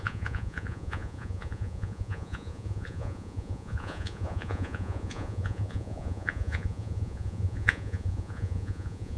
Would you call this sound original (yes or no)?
no